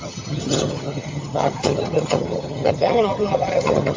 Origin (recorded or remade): remade